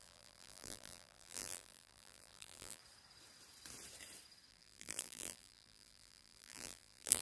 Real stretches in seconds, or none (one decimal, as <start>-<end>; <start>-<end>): 2.8-4.5